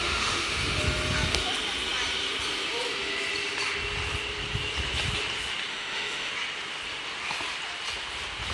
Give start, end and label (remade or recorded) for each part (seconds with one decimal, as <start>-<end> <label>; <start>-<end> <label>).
0.0-0.8 remade; 0.8-5.7 recorded; 5.7-6.3 remade; 6.3-8.5 recorded